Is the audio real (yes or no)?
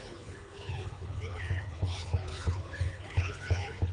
no